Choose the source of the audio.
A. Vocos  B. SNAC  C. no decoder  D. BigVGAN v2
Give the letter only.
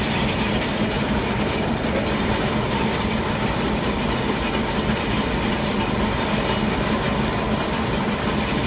D